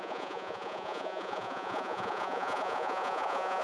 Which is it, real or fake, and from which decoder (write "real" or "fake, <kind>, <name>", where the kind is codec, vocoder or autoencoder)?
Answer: fake, vocoder, Vocos